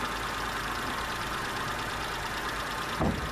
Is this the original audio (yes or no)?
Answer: yes